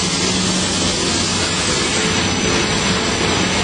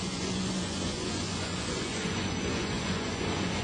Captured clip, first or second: first